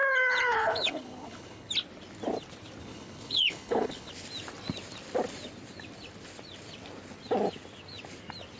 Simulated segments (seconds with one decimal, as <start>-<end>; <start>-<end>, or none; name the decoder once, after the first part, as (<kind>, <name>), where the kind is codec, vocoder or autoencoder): 0.0-1.7 (codec, HILCodec); 2.8-4.1